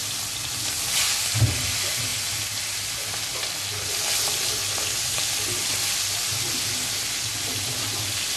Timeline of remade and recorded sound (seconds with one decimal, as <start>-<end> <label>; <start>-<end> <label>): 0.0-8.4 recorded